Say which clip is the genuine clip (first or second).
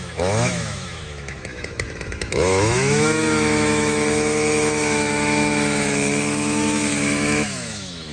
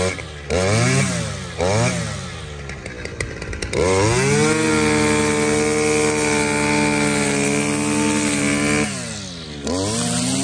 second